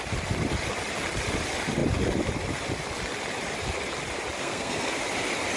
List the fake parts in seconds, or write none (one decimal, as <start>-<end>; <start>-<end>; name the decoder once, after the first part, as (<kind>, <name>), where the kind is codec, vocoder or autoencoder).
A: 4.4-5.0 (codec, SNAC)